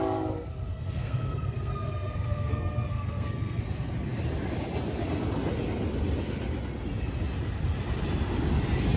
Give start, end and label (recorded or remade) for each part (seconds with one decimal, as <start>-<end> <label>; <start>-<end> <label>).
0.0-0.7 recorded; 0.7-3.6 remade; 3.6-9.0 recorded